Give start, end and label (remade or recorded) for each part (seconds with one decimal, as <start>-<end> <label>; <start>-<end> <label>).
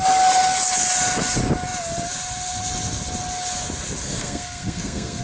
0.0-4.0 recorded; 4.0-5.2 remade